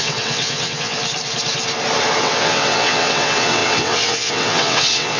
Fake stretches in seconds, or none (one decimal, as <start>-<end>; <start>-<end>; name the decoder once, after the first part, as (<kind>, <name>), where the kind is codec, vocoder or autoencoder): 0.0-1.0 (vocoder, WaveNeXt); 2.2-5.2